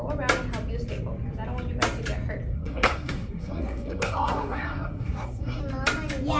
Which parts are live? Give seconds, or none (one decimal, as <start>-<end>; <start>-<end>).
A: 0.0-2.5; 5.6-6.4